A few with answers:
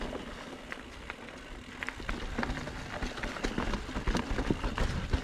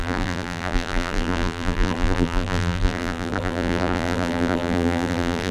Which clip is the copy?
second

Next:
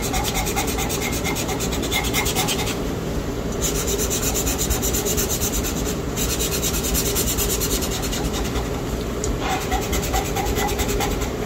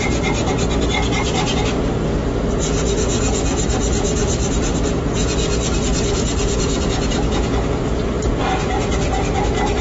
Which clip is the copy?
first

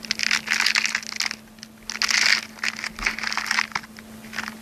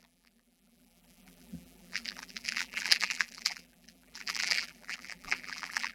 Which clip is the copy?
second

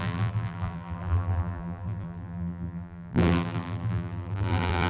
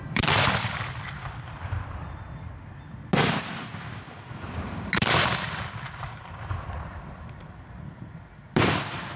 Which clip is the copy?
first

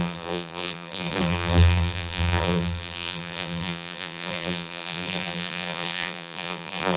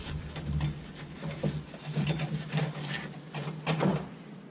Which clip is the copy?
first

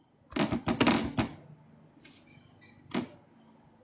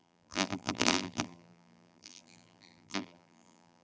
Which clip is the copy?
second